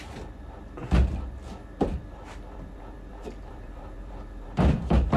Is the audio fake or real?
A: fake